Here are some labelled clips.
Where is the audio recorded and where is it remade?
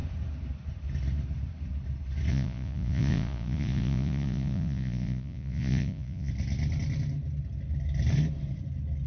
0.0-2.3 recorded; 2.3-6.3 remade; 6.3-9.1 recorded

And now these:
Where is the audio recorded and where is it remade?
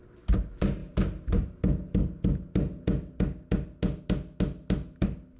0.0-5.4 recorded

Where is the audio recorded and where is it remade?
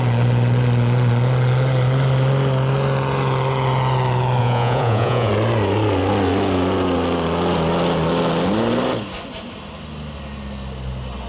0.0-4.4 recorded; 4.4-5.3 remade; 5.3-11.3 recorded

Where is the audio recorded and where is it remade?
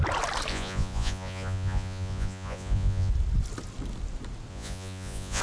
0.0-0.5 recorded; 0.5-3.1 remade; 3.1-4.5 recorded; 4.5-5.4 remade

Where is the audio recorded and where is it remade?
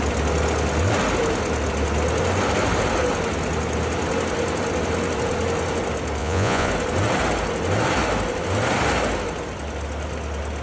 0.0-6.2 recorded; 6.2-6.7 remade; 6.7-10.6 recorded